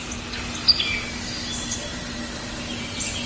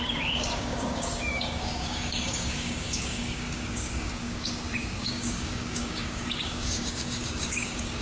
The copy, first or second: second